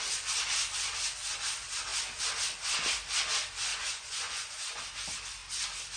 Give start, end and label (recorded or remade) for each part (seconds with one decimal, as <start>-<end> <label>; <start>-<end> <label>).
0.0-3.7 recorded; 3.7-4.8 remade; 4.8-6.0 recorded